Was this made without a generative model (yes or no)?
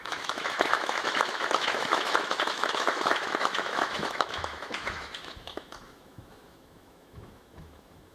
no